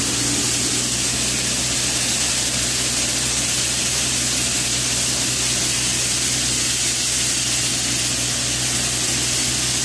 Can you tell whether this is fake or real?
real